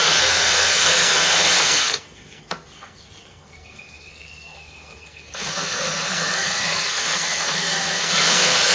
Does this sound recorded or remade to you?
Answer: remade